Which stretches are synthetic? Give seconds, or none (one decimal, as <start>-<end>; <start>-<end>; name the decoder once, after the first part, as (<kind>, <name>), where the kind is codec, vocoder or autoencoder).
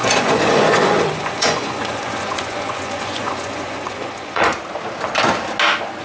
0.0-4.5 (vocoder, Vocos)